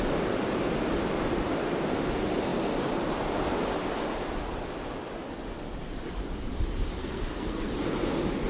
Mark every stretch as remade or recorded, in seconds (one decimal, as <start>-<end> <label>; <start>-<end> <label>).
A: 0.0-7.0 recorded; 7.0-7.7 remade; 7.7-8.5 recorded